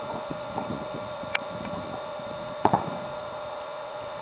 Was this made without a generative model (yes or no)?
no